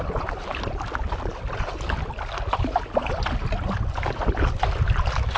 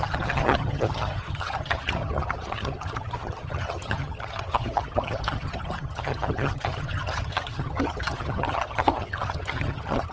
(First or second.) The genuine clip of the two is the first